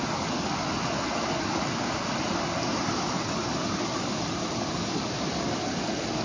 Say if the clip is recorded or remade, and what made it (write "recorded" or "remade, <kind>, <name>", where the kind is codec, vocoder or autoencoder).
recorded